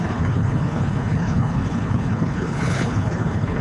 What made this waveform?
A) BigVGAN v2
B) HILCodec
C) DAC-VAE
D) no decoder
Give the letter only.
B